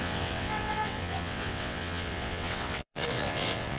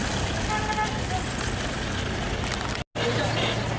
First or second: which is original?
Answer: second